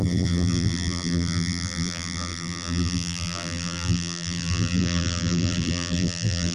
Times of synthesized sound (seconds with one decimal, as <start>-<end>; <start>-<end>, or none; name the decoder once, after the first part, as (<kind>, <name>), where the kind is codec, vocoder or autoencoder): 0.0-6.5 (vocoder, BigVGAN v2)